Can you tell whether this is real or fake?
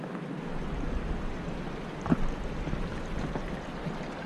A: real